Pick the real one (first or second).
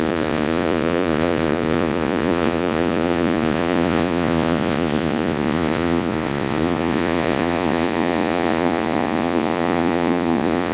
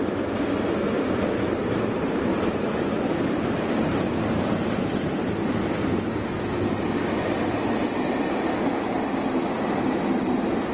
second